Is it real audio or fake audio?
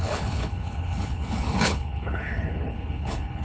fake